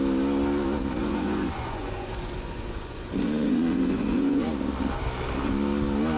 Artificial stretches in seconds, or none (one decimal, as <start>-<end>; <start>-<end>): 1.0-4.5